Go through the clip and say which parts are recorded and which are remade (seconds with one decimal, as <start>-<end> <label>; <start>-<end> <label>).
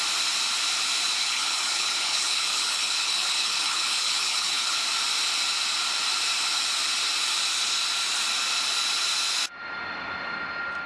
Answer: 0.0-1.2 recorded; 1.2-4.8 remade; 4.8-10.9 recorded